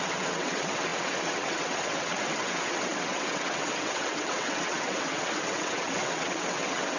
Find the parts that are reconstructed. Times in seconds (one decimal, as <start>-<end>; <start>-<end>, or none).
0.0-7.0